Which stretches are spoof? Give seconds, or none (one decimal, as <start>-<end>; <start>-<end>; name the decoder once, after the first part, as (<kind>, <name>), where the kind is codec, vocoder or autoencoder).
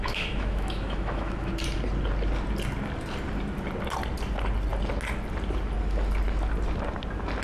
0.0-1.5 (autoencoder, DAC-VAE)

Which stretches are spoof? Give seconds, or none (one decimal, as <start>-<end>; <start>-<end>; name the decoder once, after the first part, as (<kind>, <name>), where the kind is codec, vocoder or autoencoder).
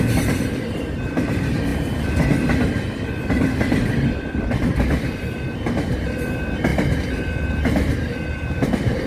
0.0-9.1 (vocoder, BigVGAN v2)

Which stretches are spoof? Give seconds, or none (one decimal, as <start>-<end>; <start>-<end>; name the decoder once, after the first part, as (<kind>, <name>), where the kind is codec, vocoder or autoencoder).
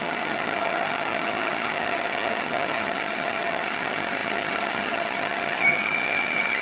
0.0-6.6 (vocoder, HiFi-GAN)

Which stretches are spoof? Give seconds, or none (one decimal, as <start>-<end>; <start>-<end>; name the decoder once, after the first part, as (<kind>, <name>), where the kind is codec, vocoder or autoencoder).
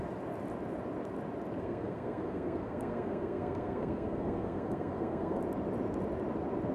1.6-5.4 (codec, SNAC)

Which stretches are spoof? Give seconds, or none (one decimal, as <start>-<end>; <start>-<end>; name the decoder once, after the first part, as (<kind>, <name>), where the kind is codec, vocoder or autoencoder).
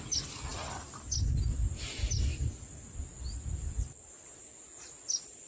0.5-1.0 (vocoder, BigVGAN v2)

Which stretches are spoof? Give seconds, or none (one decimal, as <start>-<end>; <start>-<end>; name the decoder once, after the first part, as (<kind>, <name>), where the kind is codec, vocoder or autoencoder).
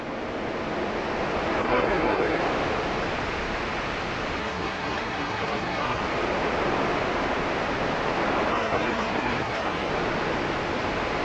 1.6-2.4 (codec, SNAC); 4.4-6.0; 8.5-9.9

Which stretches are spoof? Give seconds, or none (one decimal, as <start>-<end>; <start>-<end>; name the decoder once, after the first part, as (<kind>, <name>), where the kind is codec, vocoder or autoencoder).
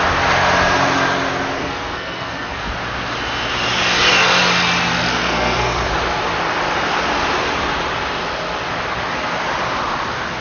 1.6-2.7 (codec, SNAC); 5.1-5.9